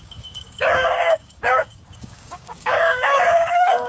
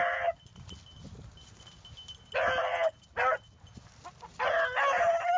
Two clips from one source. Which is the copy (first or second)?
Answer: first